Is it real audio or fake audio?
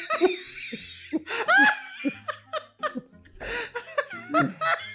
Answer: real